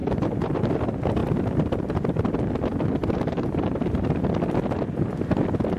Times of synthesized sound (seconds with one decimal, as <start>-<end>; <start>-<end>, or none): 0.0-0.7; 1.2-1.9; 3.0-4.2